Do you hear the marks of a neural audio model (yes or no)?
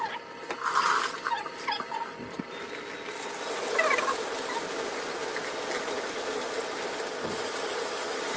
no